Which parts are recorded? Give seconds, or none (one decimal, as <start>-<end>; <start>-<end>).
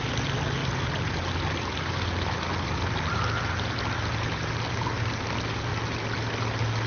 0.0-6.9